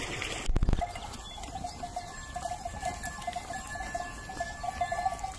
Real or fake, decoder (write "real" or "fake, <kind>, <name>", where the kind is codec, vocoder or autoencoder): real